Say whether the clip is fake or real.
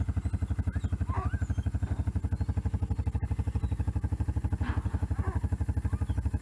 real